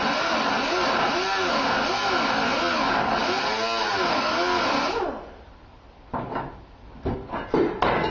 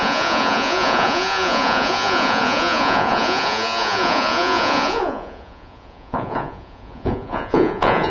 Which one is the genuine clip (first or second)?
first